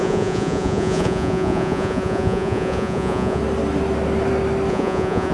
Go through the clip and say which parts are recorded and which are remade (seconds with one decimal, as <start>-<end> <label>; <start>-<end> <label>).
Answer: 0.0-3.4 remade; 3.4-4.7 recorded; 4.7-5.3 remade